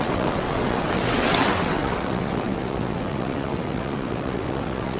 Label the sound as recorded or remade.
remade